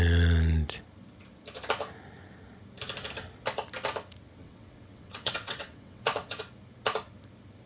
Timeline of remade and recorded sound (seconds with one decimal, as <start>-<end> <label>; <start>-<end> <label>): 0.0-4.4 recorded; 4.4-6.4 remade; 6.4-7.7 recorded